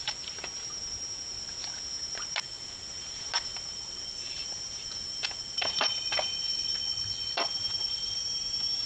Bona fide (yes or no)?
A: yes